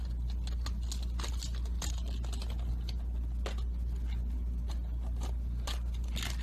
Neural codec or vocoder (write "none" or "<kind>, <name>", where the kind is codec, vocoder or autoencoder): none